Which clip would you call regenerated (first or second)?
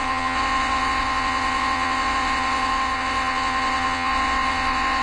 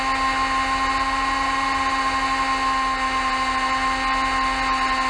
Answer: first